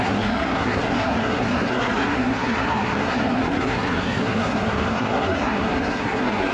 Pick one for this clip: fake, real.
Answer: fake